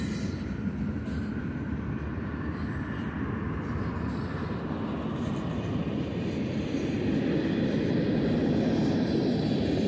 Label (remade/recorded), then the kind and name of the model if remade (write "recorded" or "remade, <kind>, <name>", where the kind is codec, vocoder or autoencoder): recorded